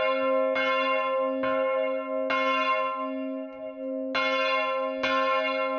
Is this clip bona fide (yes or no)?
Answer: yes